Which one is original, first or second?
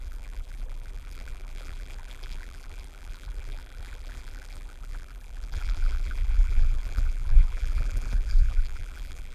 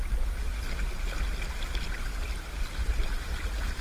second